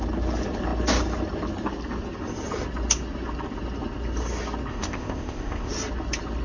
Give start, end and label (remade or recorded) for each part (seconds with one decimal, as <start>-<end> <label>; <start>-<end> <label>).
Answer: 0.0-4.7 recorded; 4.7-5.7 remade; 5.7-6.4 recorded